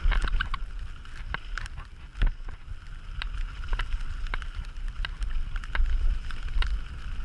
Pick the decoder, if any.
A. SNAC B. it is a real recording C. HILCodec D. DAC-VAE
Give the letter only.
B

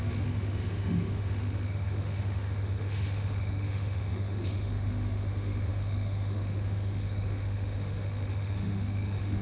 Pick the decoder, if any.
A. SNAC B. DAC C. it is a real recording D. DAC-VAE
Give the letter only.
D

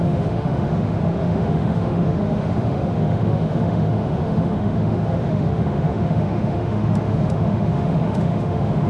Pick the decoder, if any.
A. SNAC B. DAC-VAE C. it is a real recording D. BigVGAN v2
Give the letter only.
B